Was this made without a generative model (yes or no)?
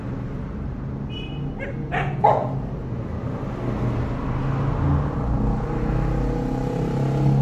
yes